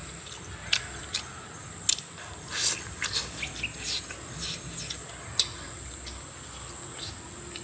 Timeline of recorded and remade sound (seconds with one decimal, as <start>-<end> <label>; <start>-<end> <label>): 0.0-7.6 recorded